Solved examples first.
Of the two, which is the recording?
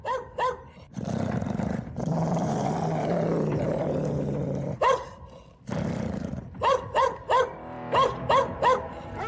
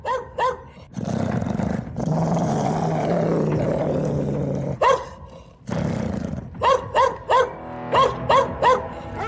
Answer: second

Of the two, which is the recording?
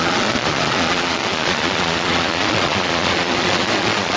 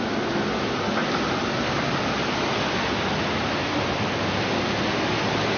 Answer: second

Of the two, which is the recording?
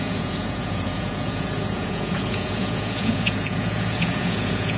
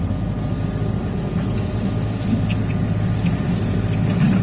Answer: second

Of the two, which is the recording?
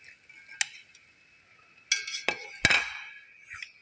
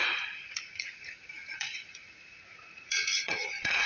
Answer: first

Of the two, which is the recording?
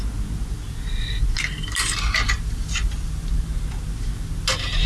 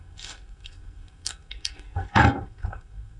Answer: first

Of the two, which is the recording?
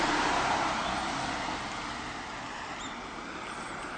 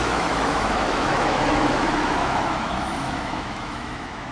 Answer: first